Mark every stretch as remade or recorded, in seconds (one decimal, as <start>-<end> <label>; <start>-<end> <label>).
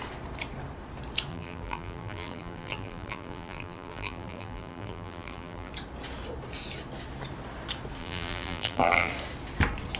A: 0.0-1.3 recorded; 1.3-5.7 remade; 5.7-8.0 recorded; 8.0-9.1 remade; 9.1-10.0 recorded